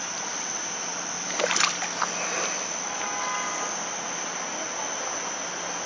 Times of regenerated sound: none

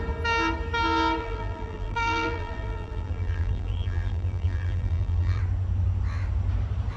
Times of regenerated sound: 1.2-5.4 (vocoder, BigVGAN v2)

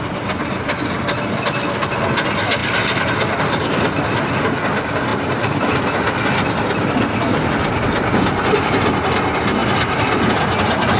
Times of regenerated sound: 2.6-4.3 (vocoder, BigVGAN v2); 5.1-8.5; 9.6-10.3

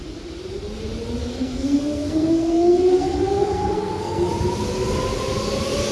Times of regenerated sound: 1.2-4.3 (codec, SNAC)